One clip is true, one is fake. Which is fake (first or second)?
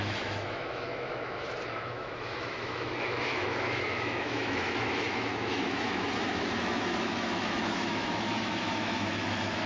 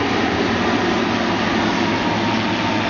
first